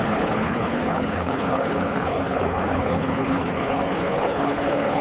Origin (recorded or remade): remade